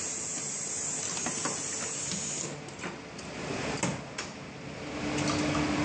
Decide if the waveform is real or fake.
real